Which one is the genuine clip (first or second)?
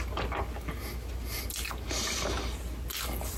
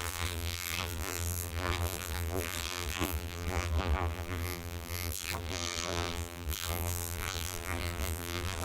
first